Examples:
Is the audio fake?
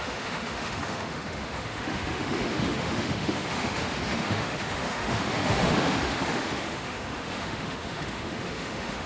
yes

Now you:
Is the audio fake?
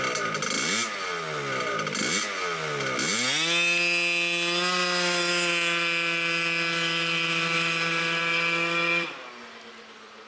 no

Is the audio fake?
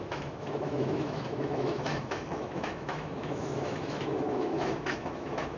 yes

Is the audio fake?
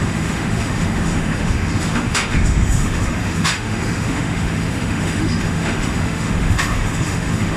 yes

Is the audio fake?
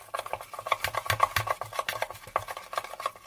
no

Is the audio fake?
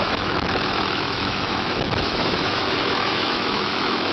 yes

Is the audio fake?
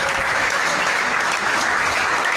yes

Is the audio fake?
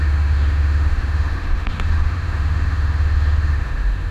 yes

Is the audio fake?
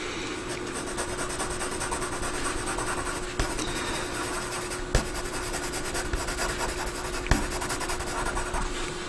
no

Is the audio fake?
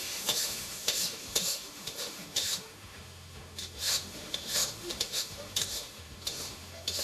yes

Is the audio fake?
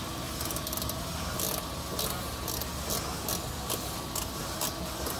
no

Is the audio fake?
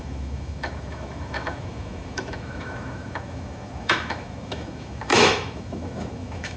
yes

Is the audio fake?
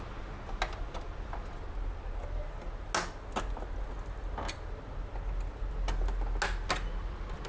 no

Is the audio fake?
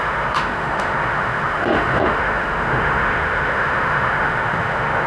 yes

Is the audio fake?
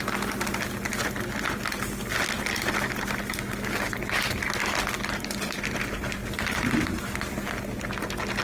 no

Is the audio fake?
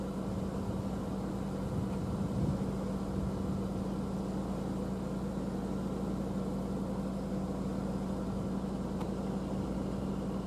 no